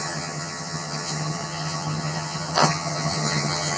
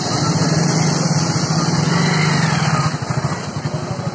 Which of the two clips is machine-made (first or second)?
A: first